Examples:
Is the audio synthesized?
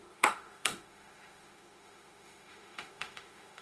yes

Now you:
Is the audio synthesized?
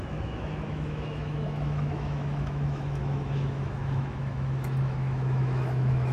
yes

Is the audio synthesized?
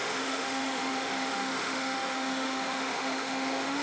yes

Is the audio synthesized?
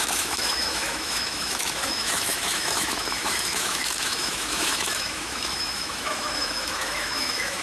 yes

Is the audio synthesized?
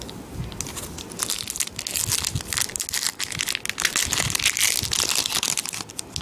no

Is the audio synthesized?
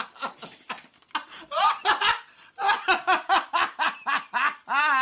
no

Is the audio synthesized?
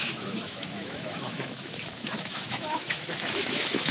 yes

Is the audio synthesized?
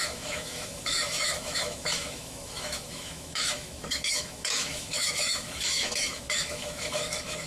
yes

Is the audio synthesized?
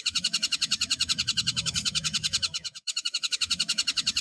yes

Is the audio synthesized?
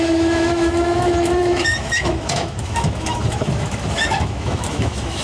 yes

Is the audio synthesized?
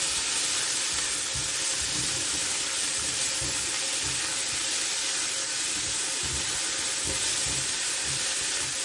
no